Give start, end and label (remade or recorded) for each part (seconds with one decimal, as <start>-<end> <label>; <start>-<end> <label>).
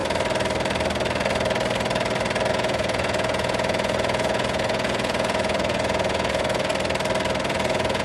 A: 0.0-2.5 recorded; 2.5-6.7 remade; 6.7-7.4 recorded; 7.4-8.0 remade